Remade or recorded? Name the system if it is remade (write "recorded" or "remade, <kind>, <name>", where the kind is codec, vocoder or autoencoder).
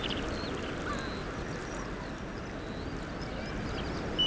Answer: recorded